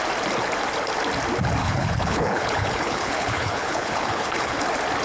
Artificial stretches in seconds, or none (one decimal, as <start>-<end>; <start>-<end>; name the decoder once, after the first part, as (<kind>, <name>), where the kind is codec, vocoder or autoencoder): 1.6-4.6 (codec, HILCodec)